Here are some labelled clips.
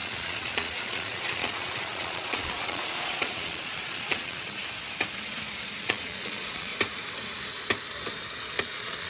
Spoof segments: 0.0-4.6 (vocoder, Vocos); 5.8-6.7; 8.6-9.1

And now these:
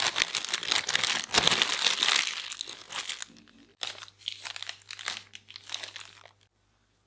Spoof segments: none

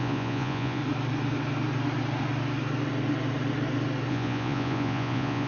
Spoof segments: 0.0-0.8 (vocoder, Vocos); 4.1-5.5

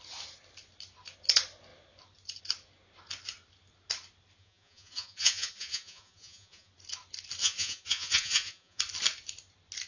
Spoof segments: 4.4-6.7 (vocoder, Vocos); 7.4-8.8

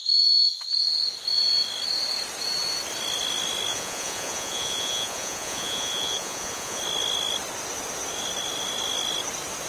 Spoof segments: 3.7-6.8 (vocoder, Vocos)

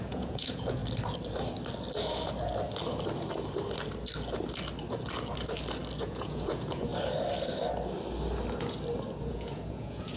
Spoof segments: 0.0-0.8 (vocoder, Vocos); 6.0-6.9; 9.2-10.2

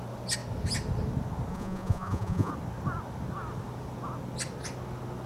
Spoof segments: 1.5-2.5 (vocoder, Vocos)

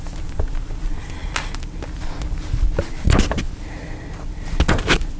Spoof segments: none